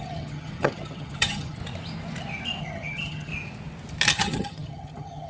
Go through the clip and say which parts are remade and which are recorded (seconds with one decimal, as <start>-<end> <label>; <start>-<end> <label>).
0.0-1.6 remade; 1.6-2.6 recorded; 2.6-3.3 remade; 3.3-4.1 recorded; 4.1-5.3 remade